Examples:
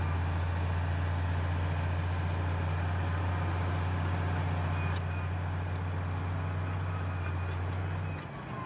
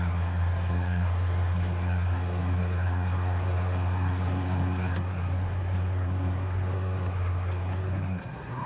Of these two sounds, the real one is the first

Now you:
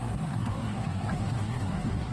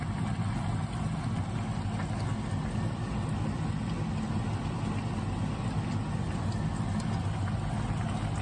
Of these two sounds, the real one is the second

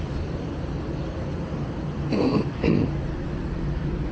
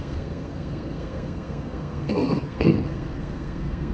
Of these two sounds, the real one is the first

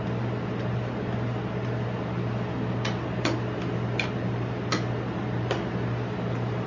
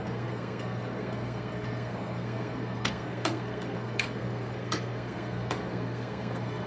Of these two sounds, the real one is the first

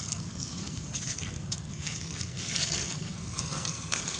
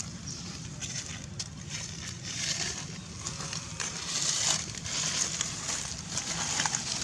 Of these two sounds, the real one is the second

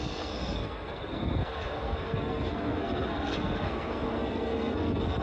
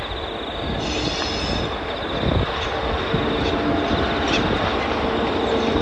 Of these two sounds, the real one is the second